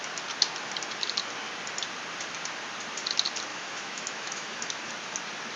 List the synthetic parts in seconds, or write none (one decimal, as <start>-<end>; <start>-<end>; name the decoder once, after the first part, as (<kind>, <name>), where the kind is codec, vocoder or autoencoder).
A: 3.5-4.9 (autoencoder, DAC-VAE)